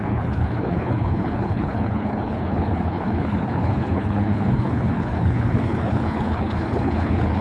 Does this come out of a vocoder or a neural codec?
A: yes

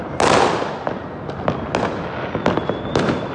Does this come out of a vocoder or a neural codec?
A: no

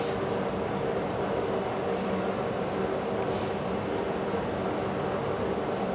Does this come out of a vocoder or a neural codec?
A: no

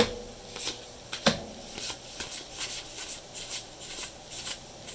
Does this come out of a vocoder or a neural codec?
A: no